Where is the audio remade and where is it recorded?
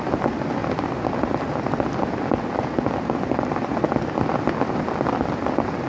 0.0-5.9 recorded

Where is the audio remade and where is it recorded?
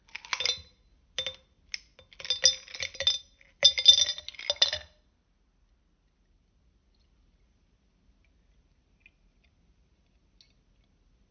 0.0-11.3 recorded